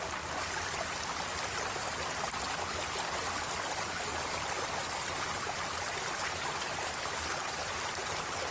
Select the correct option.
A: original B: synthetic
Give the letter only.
A